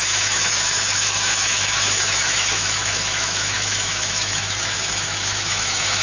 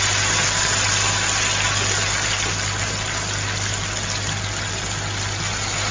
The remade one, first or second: first